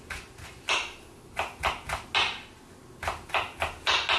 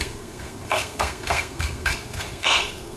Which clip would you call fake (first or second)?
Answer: second